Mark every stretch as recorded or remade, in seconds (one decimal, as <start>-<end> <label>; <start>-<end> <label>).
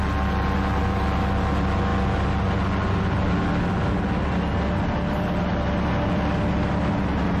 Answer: 0.0-7.4 recorded